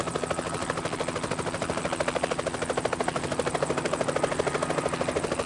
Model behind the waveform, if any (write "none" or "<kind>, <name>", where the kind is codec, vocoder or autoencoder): none